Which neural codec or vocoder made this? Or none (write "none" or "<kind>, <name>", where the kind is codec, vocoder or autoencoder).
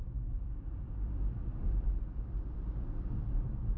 vocoder, BigVGAN v2